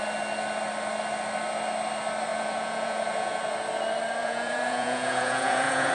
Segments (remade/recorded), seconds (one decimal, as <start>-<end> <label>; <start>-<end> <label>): 0.0-2.3 recorded; 2.3-3.4 remade; 3.4-4.2 recorded; 4.2-5.9 remade